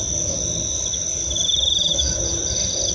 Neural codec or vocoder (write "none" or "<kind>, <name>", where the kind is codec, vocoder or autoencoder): none